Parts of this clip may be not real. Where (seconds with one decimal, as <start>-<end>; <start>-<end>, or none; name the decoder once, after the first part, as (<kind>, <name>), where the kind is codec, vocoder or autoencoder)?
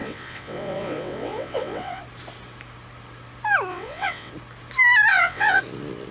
0.0-2.0 (vocoder, WaveNeXt); 3.7-4.3; 5.1-5.6